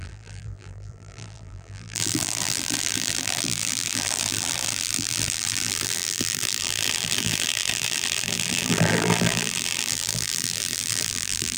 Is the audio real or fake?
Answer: fake